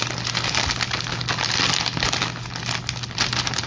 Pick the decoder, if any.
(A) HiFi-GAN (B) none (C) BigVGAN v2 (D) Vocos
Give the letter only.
B